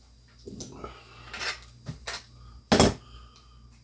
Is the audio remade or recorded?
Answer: recorded